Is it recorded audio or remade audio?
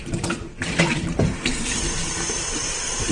remade